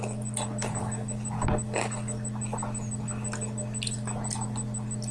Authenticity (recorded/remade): recorded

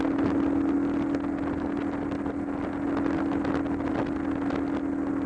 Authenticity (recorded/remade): recorded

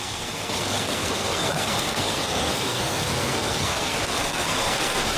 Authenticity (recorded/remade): remade